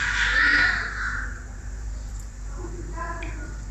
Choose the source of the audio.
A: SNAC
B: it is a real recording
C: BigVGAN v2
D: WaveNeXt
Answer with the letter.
C